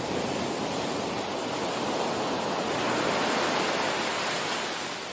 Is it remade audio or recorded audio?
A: recorded